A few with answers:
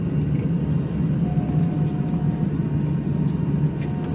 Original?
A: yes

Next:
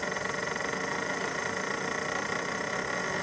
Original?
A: yes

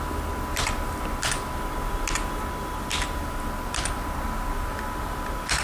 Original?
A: yes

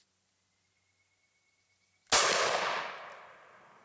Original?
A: yes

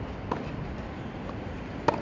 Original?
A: yes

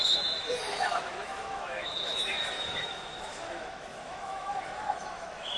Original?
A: no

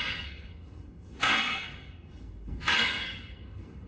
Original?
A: no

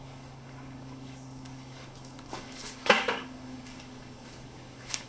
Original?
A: no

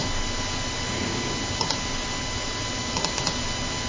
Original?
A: yes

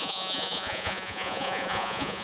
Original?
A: no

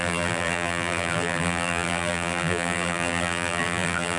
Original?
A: no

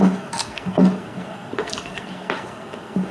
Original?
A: no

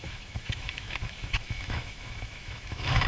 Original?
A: no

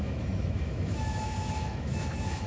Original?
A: no